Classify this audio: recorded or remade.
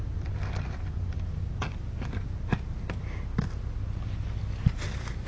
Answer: recorded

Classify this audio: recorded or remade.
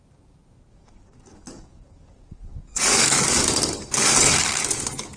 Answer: remade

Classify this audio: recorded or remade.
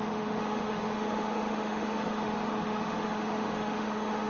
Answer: remade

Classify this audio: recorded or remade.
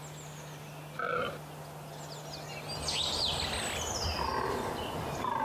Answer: recorded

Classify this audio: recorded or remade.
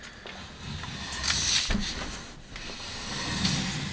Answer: recorded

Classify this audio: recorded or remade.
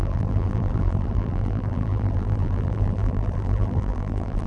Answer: remade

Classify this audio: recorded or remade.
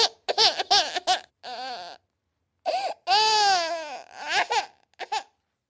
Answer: recorded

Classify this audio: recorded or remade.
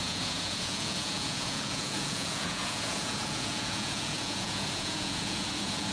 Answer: remade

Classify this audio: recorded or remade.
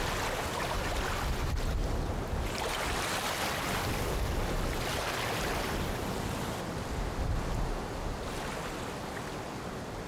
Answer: recorded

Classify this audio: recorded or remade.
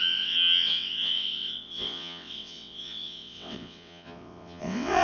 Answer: remade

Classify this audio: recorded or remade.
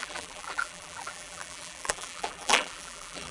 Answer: remade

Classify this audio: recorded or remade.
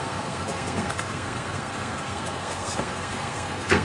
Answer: remade